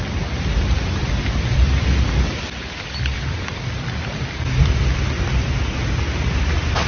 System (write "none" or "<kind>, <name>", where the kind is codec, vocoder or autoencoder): none